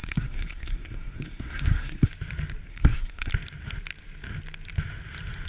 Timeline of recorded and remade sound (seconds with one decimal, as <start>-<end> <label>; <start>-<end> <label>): 0.0-2.1 remade; 2.1-2.7 recorded; 2.7-3.3 remade; 3.3-5.5 recorded